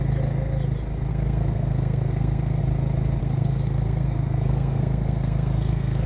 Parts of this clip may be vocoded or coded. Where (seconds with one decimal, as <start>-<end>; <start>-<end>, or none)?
1.1-2.6; 3.2-6.1